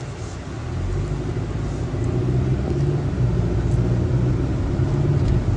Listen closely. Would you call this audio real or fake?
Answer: real